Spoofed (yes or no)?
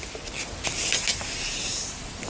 no